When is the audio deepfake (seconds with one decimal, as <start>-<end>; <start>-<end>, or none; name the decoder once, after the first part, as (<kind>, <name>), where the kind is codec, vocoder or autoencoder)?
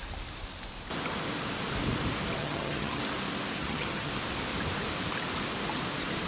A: 2.4-3.0 (vocoder, HiFi-GAN); 3.6-4.1